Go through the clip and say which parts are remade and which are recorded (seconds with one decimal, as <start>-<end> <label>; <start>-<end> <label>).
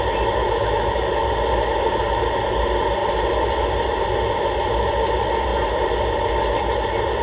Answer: 0.0-0.4 recorded; 0.4-1.2 remade; 1.2-7.2 recorded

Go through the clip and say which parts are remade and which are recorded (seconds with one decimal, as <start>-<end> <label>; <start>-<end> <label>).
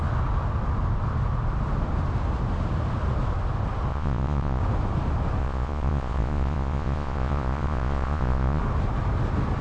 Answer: 0.0-3.9 recorded; 3.9-4.6 remade; 4.6-5.4 recorded; 5.4-8.6 remade; 8.6-9.6 recorded